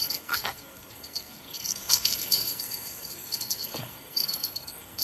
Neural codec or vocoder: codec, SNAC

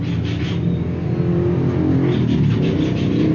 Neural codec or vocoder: none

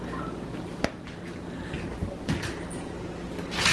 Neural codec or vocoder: none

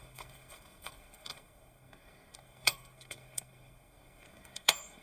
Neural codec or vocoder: codec, SNAC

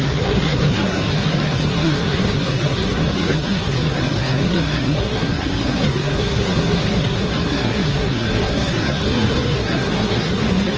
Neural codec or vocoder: codec, SNAC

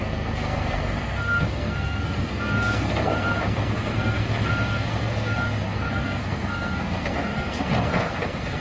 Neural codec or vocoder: codec, SNAC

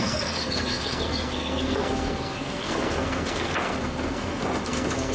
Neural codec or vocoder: codec, SNAC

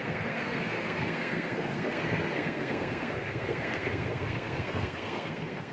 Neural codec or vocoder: codec, SNAC